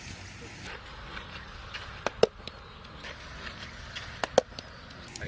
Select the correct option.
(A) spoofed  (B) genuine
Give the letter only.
B